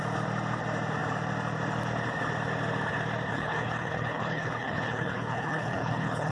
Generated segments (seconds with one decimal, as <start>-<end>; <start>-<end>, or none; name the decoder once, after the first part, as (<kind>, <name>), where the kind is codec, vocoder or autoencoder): 3.3-6.3 (codec, HILCodec)